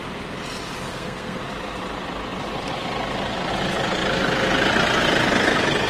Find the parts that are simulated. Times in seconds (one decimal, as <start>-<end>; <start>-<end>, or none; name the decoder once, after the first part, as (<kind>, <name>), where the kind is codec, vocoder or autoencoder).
0.9-1.4 (codec, SNAC)